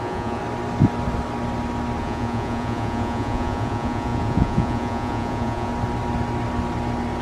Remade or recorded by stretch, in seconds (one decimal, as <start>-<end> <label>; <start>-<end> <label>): 0.0-0.4 remade; 0.4-2.0 recorded; 2.0-5.7 remade; 5.7-7.2 recorded